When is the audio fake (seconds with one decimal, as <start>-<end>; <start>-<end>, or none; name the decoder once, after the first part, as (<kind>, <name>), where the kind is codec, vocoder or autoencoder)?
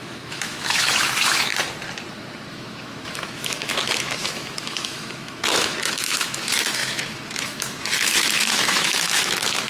0.0-1.5 (autoencoder, DAC-VAE); 2.5-9.7